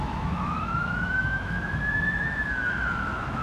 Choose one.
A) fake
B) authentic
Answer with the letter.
A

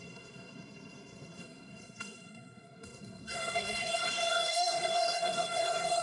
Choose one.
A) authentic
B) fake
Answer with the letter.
B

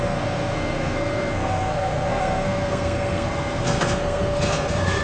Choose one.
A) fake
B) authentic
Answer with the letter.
A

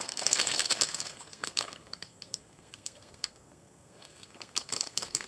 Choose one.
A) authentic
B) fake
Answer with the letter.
B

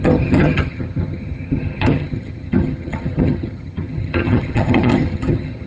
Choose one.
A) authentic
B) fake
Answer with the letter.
B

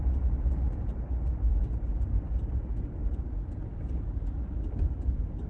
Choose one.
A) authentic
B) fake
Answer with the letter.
A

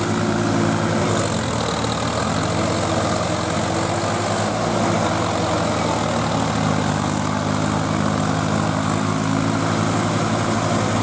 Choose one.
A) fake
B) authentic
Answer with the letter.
B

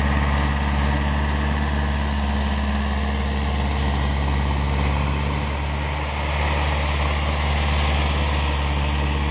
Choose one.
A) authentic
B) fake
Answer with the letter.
A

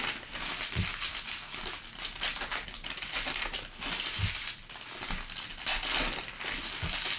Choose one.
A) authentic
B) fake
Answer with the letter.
A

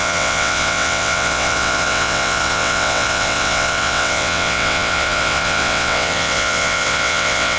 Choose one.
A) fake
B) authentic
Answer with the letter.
A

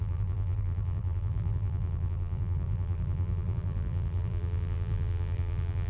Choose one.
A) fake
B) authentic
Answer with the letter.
A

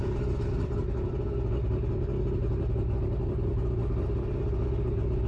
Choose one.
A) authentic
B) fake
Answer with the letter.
A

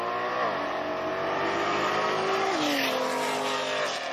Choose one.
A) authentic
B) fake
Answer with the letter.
A